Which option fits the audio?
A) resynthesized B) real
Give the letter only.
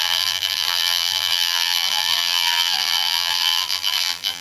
A